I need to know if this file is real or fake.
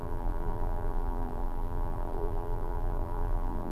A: fake